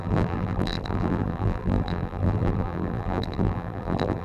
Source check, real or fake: fake